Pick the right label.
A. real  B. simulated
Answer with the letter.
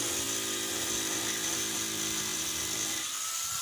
A